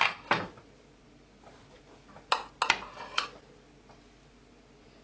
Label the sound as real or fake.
real